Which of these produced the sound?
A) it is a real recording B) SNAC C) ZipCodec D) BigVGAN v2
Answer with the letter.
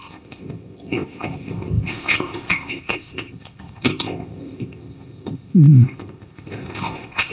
C